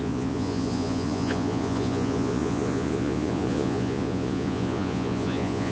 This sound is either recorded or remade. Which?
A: remade